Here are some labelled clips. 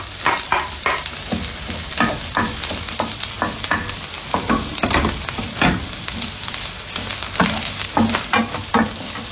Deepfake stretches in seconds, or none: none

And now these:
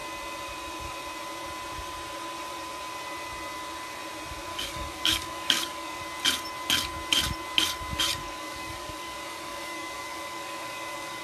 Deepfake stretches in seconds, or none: 4.5-6.0 (codec, DAC); 8.2-11.2

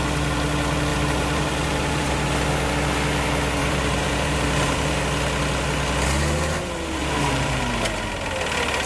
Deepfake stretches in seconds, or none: 0.9-2.3 (vocoder, BigVGAN v2); 3.6-5.0; 7.0-7.6